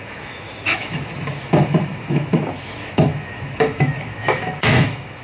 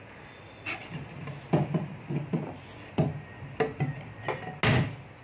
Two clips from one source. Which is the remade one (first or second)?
first